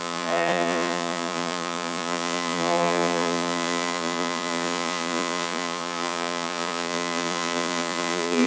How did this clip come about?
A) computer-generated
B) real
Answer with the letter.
A